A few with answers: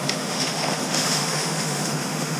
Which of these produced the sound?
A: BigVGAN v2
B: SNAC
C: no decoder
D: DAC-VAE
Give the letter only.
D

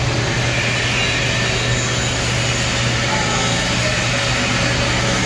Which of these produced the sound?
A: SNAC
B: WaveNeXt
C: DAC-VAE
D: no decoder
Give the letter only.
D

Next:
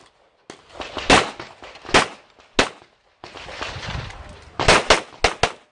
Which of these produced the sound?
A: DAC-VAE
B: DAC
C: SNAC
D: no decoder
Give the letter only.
D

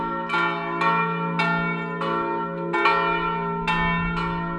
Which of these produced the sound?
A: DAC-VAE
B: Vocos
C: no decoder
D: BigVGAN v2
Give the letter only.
C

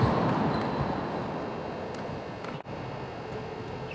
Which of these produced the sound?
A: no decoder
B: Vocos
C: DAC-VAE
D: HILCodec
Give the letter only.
A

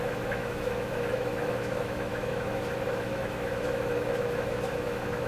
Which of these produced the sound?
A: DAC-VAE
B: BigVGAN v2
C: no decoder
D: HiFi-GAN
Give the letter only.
A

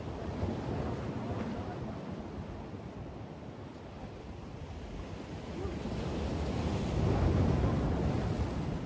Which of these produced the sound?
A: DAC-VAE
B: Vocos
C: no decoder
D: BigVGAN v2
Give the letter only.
C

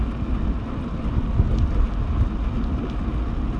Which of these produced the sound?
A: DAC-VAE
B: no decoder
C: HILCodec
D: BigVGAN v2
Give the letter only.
B